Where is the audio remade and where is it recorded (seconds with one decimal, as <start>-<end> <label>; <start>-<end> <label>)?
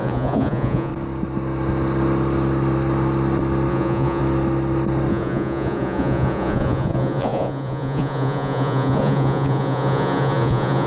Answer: 0.0-0.9 remade; 0.9-3.7 recorded; 3.7-4.2 remade; 4.2-5.1 recorded; 5.1-10.9 remade